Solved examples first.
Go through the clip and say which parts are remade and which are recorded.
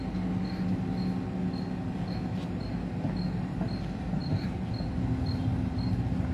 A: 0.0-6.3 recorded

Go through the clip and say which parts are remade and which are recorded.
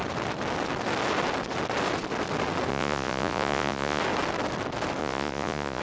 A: 0.0-2.7 recorded; 2.7-4.0 remade; 4.0-5.0 recorded; 5.0-5.8 remade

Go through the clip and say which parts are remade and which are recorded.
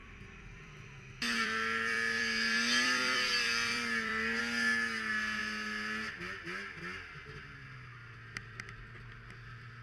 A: 0.0-4.4 remade; 4.4-9.8 recorded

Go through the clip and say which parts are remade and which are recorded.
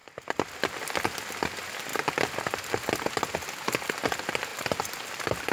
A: 0.0-4.5 recorded; 4.5-5.5 remade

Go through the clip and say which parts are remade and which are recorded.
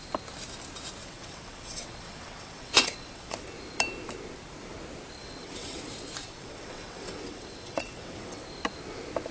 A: 0.0-1.0 recorded; 1.0-3.4 remade; 3.4-5.2 recorded; 5.2-5.8 remade; 5.8-6.2 recorded; 6.2-8.4 remade; 8.4-9.3 recorded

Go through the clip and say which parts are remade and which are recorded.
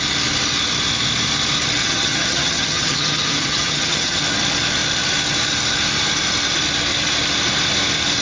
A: 0.0-1.8 recorded; 1.8-4.2 remade; 4.2-8.2 recorded